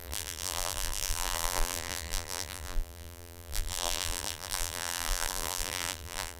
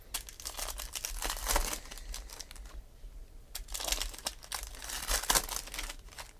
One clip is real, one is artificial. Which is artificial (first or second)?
first